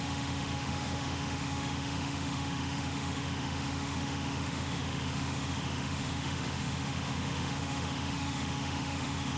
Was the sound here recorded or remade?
remade